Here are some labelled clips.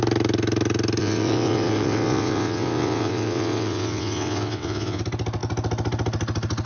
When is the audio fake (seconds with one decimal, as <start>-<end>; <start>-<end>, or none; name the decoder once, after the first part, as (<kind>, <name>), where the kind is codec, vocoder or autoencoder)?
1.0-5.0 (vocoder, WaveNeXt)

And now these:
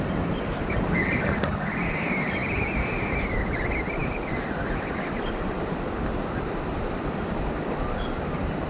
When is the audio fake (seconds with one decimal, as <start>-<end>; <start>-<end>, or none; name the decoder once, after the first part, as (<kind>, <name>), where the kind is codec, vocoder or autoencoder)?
none

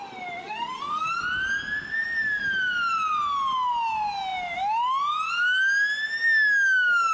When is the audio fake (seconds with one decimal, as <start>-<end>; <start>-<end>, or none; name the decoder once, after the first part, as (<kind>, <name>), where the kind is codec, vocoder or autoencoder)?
0.4-1.2 (codec, SNAC)

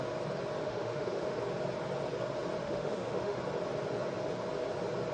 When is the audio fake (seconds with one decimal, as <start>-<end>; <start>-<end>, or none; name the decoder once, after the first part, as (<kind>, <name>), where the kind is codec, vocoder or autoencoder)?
0.6-1.4 (autoencoder, DAC-VAE); 2.6-3.4

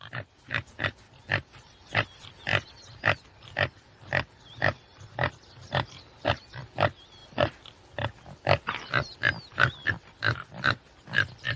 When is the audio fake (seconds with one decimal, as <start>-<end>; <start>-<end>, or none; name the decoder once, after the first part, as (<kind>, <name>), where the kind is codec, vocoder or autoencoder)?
none